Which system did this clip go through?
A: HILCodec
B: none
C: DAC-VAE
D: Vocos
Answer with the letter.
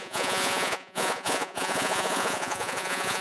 D